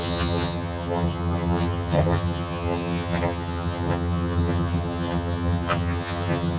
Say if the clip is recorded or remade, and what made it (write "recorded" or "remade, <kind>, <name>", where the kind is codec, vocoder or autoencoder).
remade, vocoder, HiFi-GAN